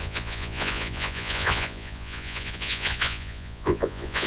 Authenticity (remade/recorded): remade